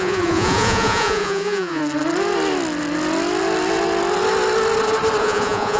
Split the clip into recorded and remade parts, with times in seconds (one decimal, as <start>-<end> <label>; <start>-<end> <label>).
0.0-1.8 remade; 1.8-5.2 recorded; 5.2-5.8 remade